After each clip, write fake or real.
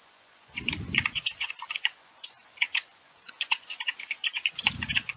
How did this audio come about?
fake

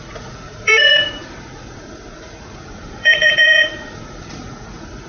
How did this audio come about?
fake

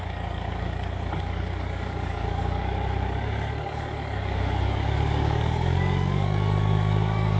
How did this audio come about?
fake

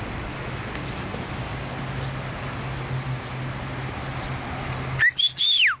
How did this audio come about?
real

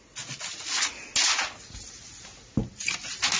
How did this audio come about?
real